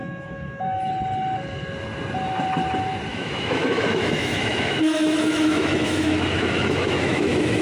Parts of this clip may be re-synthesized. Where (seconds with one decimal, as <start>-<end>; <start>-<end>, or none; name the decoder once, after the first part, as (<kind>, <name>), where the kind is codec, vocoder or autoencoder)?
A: 0.0-0.9 (autoencoder, DAC-VAE); 3.1-7.6